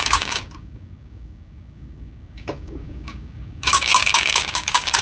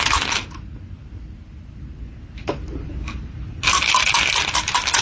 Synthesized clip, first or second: first